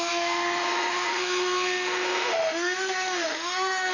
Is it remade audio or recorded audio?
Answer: remade